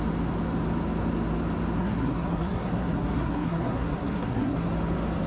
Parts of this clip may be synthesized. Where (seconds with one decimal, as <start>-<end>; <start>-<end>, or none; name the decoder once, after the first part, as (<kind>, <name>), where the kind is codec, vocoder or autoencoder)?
1.8-4.7 (codec, SNAC)